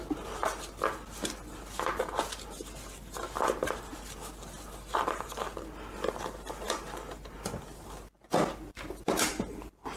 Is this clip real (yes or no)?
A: no